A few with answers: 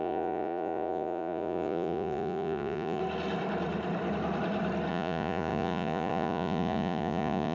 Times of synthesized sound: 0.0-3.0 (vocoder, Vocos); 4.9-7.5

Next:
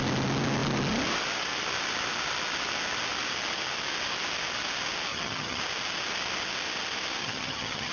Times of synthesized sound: 5.1-5.6 (vocoder, HiFi-GAN); 7.2-7.9

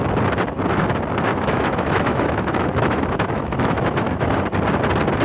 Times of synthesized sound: 1.3-4.4 (autoencoder, DAC-VAE)

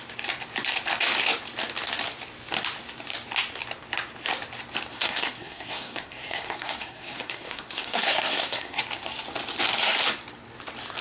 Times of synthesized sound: 4.9-8.8 (codec, SNAC)